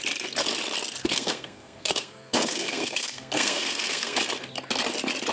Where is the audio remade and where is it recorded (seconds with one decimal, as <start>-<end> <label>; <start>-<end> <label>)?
0.0-1.0 recorded; 1.0-4.2 remade; 4.2-5.3 recorded